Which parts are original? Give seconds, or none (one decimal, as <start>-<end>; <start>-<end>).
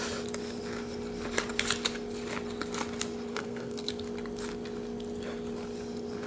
0.0-3.3; 3.9-6.3